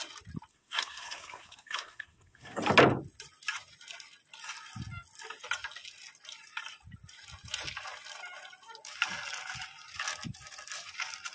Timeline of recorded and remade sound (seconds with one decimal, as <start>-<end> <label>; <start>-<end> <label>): 0.0-0.5 recorded; 0.5-2.6 remade; 2.6-11.3 recorded